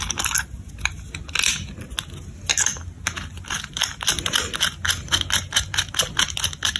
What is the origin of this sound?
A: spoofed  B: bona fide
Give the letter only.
B